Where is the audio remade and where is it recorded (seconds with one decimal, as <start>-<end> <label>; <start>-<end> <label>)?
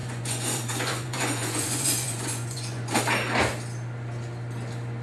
0.0-3.0 remade; 3.0-5.0 recorded